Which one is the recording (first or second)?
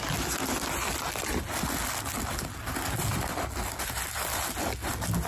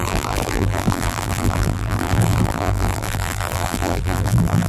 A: first